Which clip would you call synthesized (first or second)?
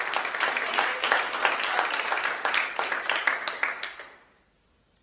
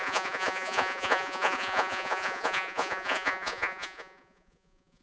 second